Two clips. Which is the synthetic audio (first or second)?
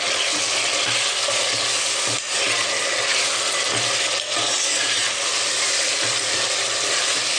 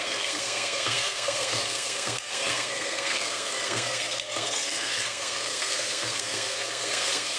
second